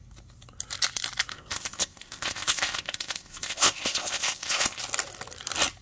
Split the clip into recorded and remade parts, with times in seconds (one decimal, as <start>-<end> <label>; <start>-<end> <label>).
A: 0.0-1.3 recorded; 1.3-4.8 remade; 4.8-5.8 recorded